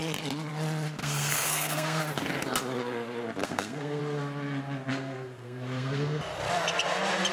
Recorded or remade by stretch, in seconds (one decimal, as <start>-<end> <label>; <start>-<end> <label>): 0.0-1.0 recorded; 1.0-2.0 remade; 2.0-3.4 recorded; 3.4-4.0 remade; 4.0-4.9 recorded; 4.9-6.2 remade; 6.2-7.3 recorded